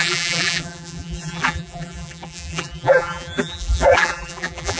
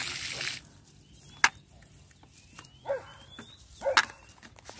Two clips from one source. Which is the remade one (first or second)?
first